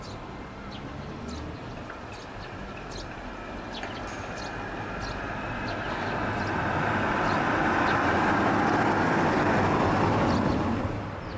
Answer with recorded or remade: recorded